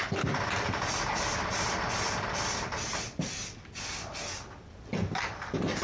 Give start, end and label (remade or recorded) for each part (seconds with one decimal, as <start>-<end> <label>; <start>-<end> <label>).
0.0-5.8 recorded